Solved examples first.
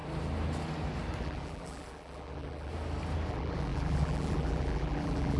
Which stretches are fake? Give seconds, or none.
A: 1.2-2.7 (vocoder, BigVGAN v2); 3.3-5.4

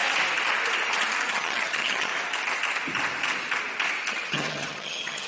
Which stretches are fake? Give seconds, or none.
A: 1.3-2.1 (vocoder, HiFi-GAN); 4.1-5.3

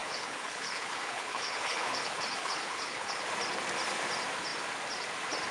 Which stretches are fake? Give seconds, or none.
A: 0.0-3.2 (codec, HILCodec)

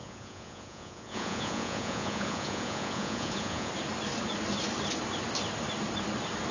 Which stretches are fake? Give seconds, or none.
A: 0.0-3.7 (vocoder, Vocos)

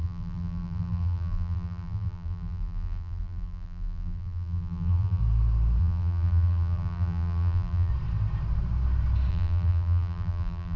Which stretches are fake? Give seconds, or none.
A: 0.0-5.2 (vocoder, BigVGAN v2); 5.8-7.9; 9.3-10.8

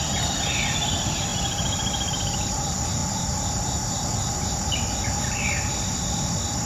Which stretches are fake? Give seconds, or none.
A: none